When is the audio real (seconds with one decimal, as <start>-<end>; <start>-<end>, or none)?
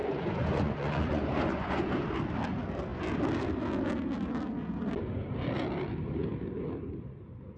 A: 2.0-7.6